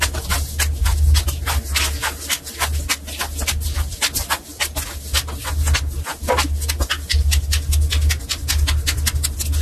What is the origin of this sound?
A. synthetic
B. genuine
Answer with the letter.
B